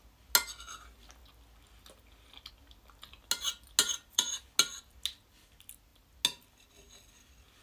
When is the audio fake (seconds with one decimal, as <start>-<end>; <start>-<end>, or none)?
3.8-4.4